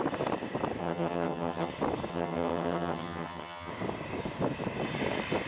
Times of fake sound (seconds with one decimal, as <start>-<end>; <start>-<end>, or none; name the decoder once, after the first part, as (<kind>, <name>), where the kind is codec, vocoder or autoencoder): 0.8-1.7 (vocoder, HiFi-GAN); 2.1-3.7